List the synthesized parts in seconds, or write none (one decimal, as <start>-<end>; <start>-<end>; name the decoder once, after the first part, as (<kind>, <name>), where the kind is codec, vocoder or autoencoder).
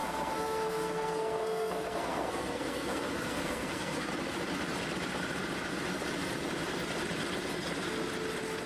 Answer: 0.0-4.1 (codec, SNAC)